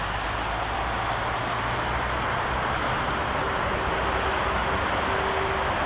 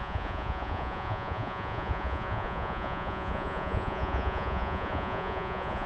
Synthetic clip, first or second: second